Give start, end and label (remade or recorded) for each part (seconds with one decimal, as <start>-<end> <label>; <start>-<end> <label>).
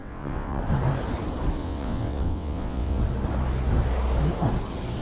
0.0-0.6 remade; 0.6-1.6 recorded; 1.6-3.0 remade; 3.0-5.0 recorded